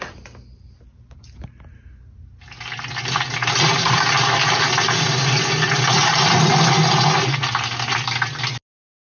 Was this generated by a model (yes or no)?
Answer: no